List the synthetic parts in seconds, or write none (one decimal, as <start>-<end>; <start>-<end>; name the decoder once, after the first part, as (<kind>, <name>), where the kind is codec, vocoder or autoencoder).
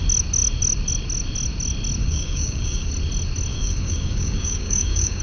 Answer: 2.0-2.9 (codec, DAC); 3.5-5.2